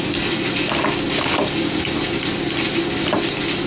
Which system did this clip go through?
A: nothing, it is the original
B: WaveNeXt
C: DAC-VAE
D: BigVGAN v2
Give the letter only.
A